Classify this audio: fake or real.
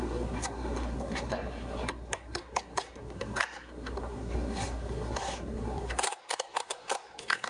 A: fake